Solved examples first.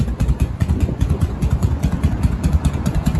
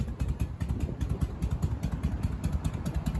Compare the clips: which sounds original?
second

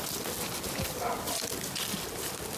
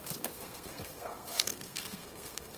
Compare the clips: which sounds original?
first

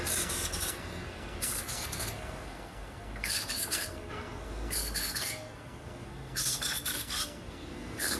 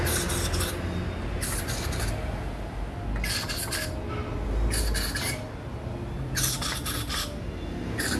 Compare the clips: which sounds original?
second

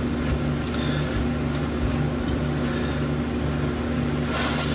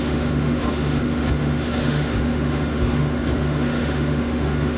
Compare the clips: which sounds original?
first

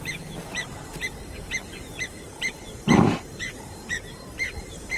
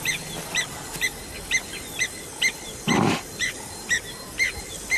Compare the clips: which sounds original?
second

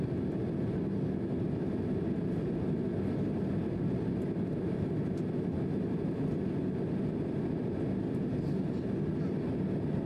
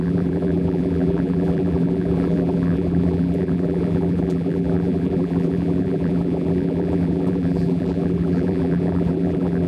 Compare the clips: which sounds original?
first